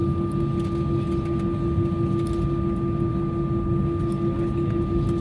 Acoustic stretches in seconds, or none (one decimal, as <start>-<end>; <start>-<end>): 0.0-5.2